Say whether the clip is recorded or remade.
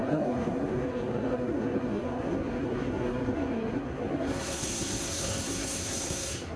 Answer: remade